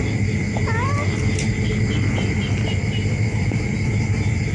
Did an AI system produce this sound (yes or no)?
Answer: no